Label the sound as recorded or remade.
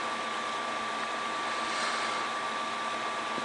recorded